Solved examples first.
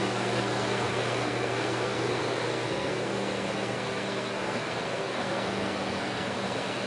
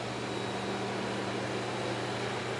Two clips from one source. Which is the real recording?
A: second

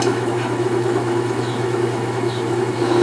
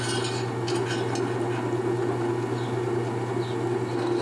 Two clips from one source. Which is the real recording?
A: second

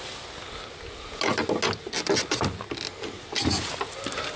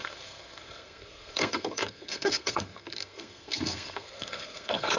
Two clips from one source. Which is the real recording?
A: first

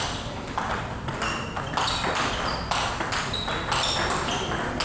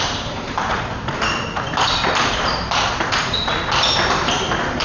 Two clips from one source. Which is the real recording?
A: first